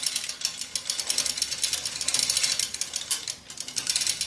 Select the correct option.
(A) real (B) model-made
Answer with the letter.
A